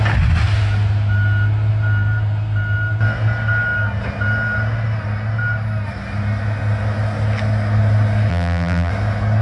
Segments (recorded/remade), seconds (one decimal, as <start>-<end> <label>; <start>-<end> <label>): 0.0-8.3 recorded; 8.3-8.9 remade; 8.9-9.4 recorded